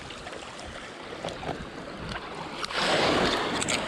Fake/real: real